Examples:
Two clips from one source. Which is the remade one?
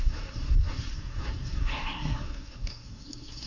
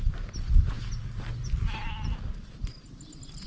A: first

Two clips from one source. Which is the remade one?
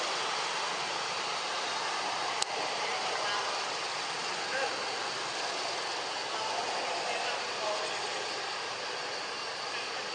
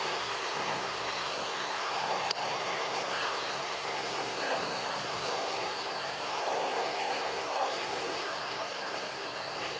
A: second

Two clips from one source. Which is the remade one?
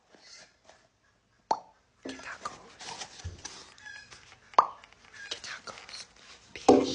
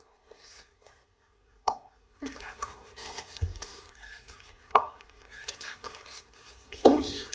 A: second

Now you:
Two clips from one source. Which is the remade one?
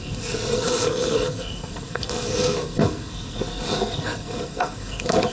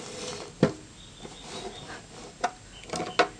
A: first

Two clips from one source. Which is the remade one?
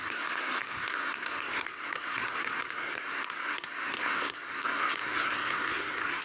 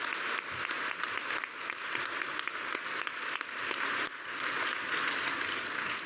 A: first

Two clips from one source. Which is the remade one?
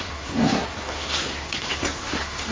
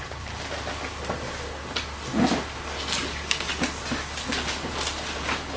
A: first